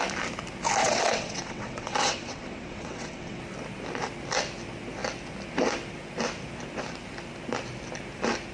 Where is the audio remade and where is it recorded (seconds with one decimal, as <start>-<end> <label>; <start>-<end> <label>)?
0.0-0.8 recorded; 0.8-3.4 remade; 3.4-8.5 recorded